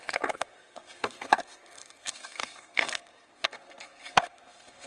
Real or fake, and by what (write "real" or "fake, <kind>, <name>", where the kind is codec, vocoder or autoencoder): fake, codec, SNAC